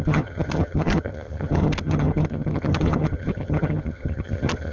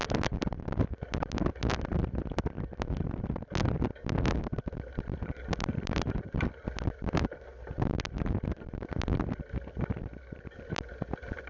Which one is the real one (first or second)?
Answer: second